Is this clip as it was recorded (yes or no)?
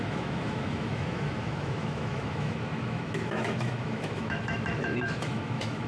no